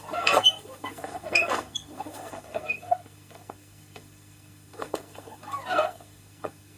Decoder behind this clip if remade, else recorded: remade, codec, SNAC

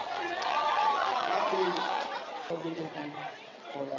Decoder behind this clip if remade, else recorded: remade, vocoder, WaveNeXt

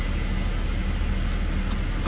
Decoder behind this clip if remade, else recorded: recorded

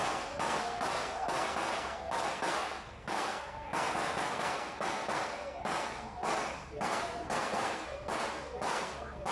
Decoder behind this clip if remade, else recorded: remade, codec, SNAC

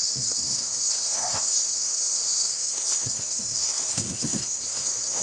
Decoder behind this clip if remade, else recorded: remade, codec, SNAC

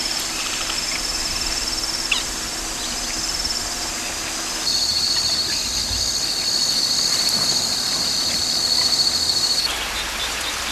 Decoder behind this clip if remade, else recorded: recorded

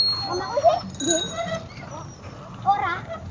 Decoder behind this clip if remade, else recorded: recorded